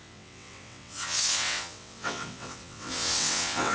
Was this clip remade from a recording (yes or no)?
yes